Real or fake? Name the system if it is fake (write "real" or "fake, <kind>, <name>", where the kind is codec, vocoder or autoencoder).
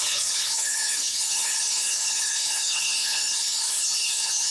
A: fake, codec, HILCodec